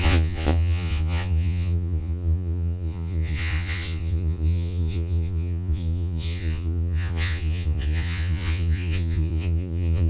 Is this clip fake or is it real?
fake